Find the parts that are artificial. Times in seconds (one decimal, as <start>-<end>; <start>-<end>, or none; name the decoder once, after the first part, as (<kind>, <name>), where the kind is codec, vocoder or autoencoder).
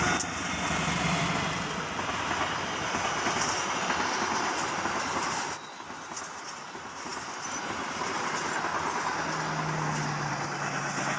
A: none